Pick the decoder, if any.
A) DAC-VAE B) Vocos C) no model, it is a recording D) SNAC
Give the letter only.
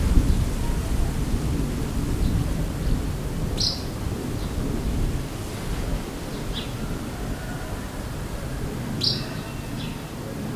C